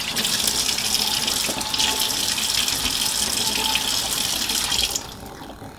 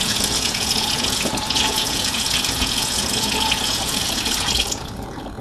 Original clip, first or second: first